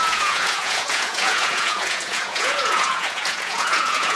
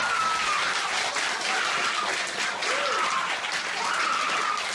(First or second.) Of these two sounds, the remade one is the first